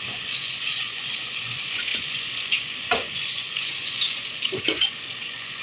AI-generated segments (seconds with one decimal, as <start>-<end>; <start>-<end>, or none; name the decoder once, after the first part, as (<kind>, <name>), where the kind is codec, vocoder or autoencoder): 0.0-5.6 (vocoder, Vocos)